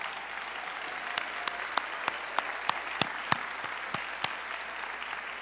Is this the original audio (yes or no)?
yes